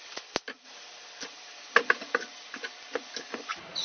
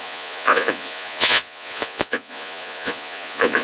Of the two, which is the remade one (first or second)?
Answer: second